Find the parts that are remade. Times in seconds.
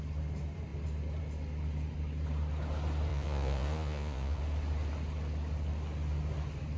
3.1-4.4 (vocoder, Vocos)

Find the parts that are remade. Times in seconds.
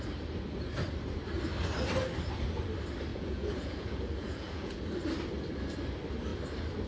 3.1-4.8 (vocoder, Vocos)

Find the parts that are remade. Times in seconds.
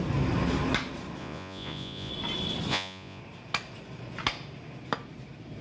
1.2-2.1 (vocoder, Vocos); 2.7-3.2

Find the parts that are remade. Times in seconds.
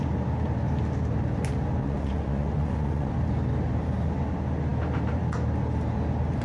1.8-3.1 (vocoder, Vocos)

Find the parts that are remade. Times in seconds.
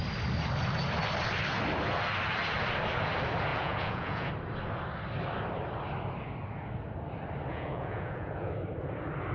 3.5-4.3 (vocoder, Vocos); 7.5-8.5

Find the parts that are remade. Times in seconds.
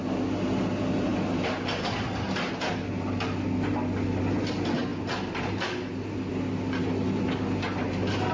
none